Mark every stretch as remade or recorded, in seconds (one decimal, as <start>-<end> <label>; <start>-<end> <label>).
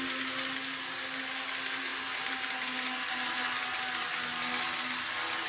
0.0-5.5 recorded